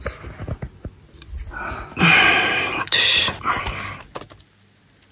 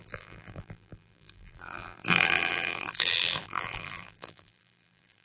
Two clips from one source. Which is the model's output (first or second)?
second